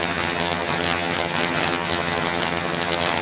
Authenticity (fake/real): fake